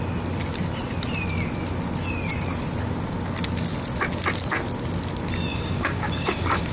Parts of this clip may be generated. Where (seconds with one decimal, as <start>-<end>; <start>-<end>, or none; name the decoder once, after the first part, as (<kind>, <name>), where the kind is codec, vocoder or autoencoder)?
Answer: 5.5-6.7 (codec, DAC)